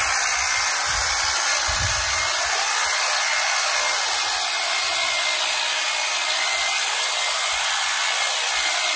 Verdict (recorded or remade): recorded